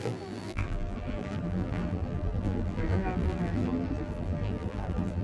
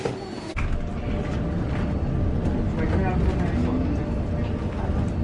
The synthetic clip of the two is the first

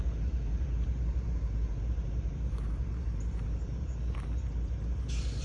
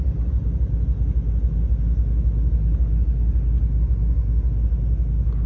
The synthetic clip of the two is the first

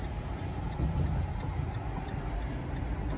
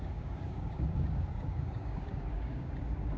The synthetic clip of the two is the second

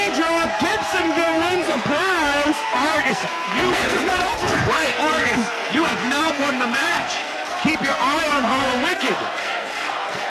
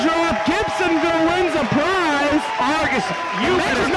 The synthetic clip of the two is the first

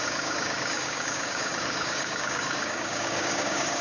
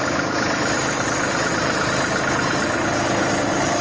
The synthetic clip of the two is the first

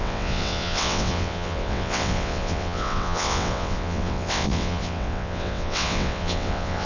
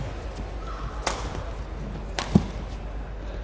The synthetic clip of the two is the first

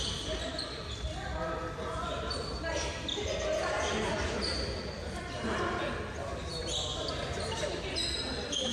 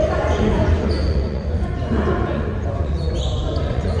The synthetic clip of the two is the second